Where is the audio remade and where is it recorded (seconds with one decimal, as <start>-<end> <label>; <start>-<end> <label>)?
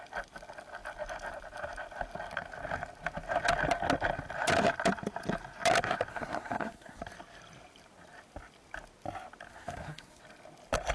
0.0-6.1 recorded; 6.1-7.0 remade; 7.0-9.5 recorded; 9.5-10.2 remade; 10.2-10.9 recorded